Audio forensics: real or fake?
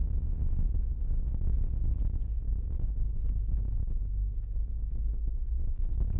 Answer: fake